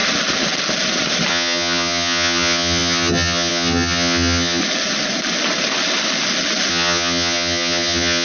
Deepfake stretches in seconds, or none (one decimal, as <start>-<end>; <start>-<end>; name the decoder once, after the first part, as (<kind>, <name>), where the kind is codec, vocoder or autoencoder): 1.3-4.6 (vocoder, HiFi-GAN); 6.7-8.2